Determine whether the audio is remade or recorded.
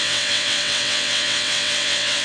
remade